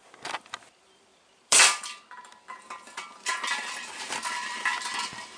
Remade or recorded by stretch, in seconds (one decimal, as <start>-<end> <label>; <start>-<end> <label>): 0.0-4.7 remade; 4.7-5.4 recorded